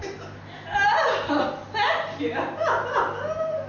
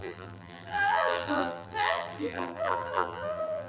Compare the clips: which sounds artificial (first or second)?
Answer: second